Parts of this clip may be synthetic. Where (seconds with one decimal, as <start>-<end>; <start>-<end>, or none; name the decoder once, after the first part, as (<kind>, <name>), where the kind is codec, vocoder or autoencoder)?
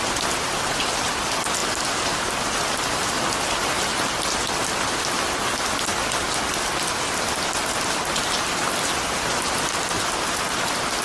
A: none